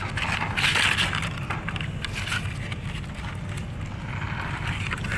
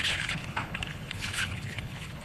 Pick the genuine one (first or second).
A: first